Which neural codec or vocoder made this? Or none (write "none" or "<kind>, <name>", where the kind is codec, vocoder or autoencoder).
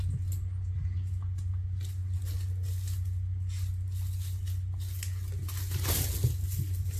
none